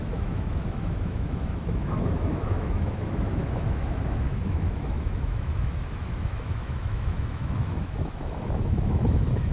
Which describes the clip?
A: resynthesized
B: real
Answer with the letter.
A